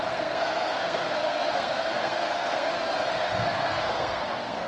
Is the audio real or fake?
fake